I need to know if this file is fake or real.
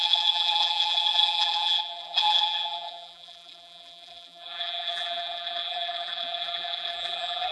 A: fake